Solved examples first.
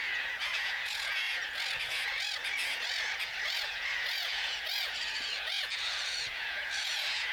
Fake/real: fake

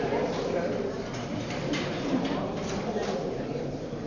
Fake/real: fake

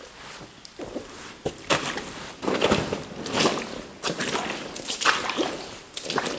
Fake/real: real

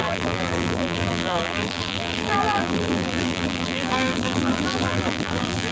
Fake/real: fake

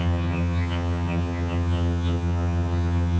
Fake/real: fake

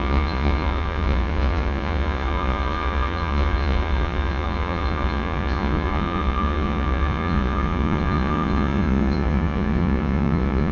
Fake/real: fake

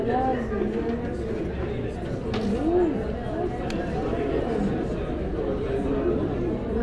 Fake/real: real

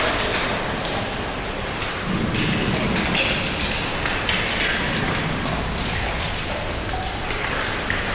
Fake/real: real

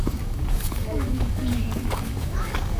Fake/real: fake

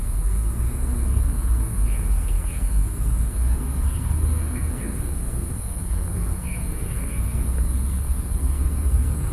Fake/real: fake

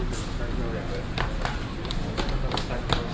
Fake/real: real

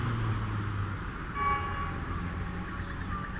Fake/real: real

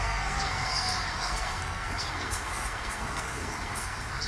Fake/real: fake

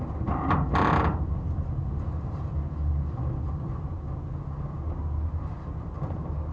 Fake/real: real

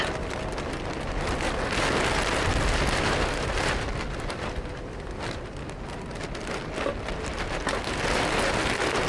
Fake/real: real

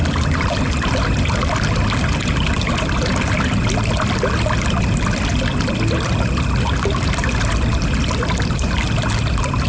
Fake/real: real